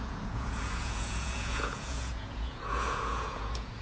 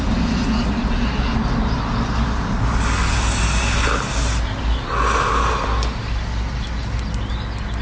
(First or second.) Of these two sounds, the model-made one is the first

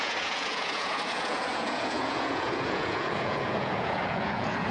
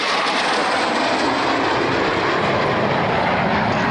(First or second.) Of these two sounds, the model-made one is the first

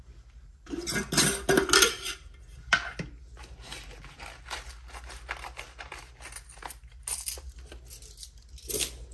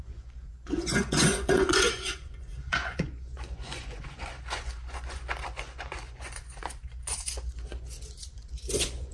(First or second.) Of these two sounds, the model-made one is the second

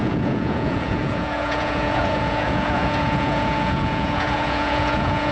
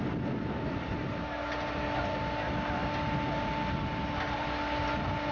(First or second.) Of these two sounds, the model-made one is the first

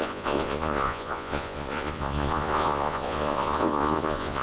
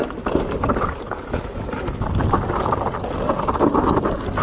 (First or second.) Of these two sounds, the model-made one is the first